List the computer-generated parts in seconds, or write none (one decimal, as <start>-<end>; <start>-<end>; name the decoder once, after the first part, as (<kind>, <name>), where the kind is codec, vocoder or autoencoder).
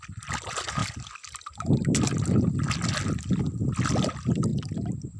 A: 4.5-5.2 (vocoder, BigVGAN v2)